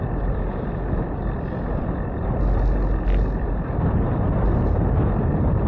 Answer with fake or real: real